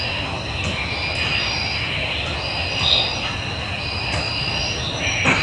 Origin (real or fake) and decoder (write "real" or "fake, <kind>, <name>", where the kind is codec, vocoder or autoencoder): real